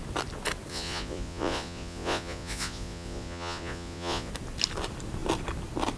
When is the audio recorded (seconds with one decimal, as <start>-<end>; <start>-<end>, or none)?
0.0-0.7; 4.3-6.0